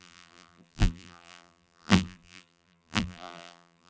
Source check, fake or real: fake